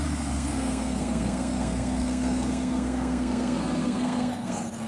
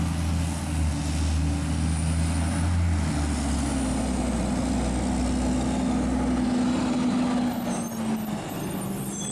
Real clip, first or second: second